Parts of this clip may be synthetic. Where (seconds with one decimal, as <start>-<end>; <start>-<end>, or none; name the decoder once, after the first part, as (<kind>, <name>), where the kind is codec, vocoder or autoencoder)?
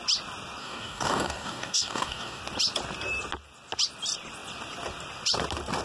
0.6-2.4 (codec, DAC)